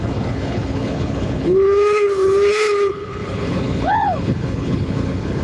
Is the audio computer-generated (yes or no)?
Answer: yes